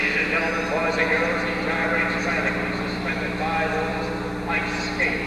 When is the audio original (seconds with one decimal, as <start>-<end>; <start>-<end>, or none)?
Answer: 0.0-5.3